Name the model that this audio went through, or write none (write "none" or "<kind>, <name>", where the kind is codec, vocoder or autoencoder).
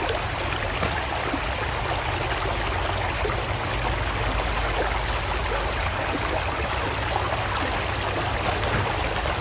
none